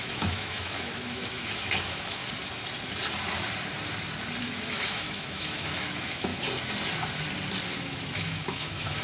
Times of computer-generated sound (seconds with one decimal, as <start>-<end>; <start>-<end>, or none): 0.0-2.2; 4.4-6.3; 7.8-9.0